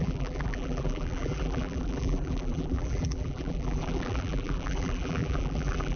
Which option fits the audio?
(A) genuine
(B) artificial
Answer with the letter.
B